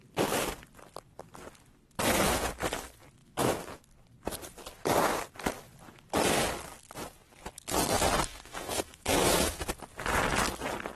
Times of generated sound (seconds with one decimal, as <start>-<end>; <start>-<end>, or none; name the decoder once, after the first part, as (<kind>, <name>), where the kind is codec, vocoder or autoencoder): 3.2-3.8 (autoencoder, DAC-VAE); 8.3-9.6